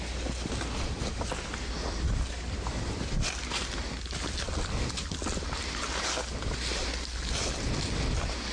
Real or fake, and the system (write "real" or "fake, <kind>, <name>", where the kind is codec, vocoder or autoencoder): real